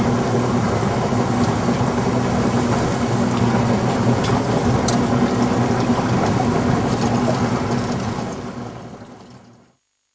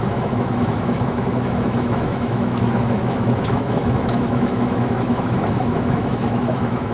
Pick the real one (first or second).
first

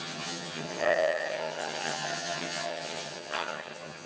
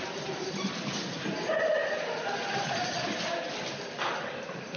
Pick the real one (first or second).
second